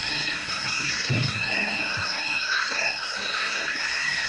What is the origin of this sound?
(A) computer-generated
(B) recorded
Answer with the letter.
A